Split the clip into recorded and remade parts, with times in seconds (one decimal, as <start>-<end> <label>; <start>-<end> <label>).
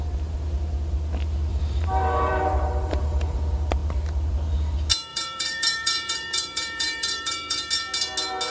0.0-1.5 recorded; 1.5-3.4 remade; 3.4-5.1 recorded; 5.1-7.7 remade; 7.7-8.5 recorded